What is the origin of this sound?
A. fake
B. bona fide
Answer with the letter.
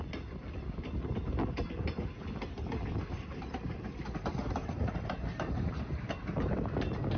B